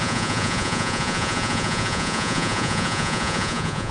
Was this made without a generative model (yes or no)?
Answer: no